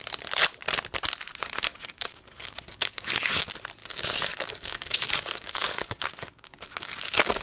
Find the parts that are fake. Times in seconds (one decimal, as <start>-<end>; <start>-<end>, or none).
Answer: 1.7-3.4; 3.8-7.4